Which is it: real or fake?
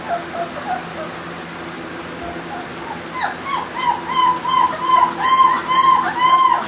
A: real